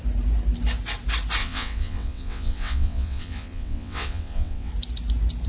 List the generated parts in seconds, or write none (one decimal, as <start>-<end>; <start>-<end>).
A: 1.4-4.7